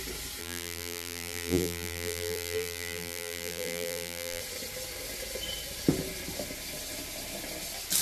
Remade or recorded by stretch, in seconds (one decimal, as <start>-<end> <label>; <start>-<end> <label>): 0.0-0.4 recorded; 0.4-4.4 remade; 4.4-8.0 recorded